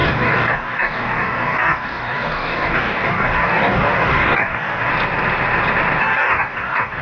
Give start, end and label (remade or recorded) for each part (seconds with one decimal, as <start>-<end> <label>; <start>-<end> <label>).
0.0-4.9 remade; 4.9-6.0 recorded; 6.0-7.0 remade